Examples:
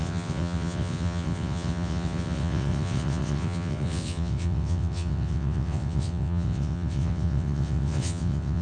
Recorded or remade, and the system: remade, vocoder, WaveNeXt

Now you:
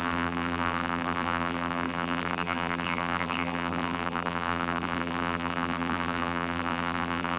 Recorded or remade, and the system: remade, vocoder, BigVGAN v2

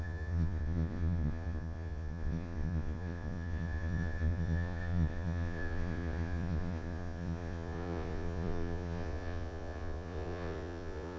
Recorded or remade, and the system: remade, vocoder, Vocos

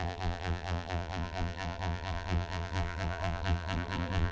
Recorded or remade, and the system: remade, vocoder, BigVGAN v2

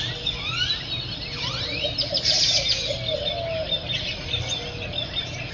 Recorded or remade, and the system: recorded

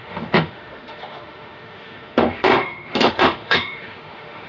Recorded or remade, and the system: remade, autoencoder, DAC-VAE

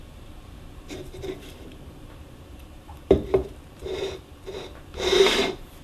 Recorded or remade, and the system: remade, vocoder, BigVGAN v2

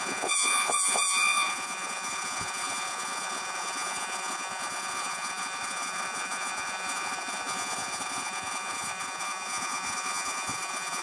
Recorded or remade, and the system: remade, vocoder, Vocos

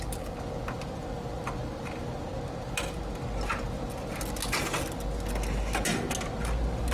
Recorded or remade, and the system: recorded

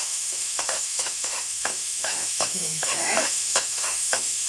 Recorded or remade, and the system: remade, autoencoder, DAC-VAE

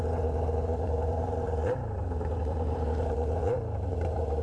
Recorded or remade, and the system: remade, vocoder, BigVGAN v2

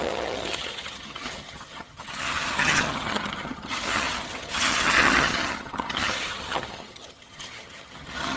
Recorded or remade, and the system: remade, vocoder, HiFi-GAN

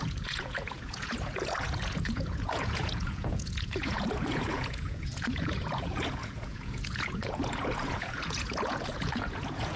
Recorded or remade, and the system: remade, vocoder, Vocos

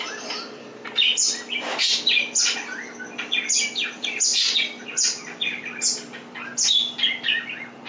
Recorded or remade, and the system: recorded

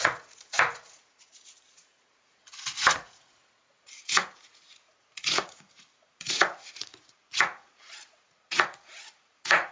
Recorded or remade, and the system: remade, vocoder, Vocos